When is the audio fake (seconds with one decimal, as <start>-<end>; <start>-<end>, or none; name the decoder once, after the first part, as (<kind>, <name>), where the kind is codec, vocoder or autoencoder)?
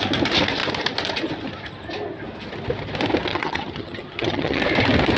3.3-4.6 (vocoder, HiFi-GAN)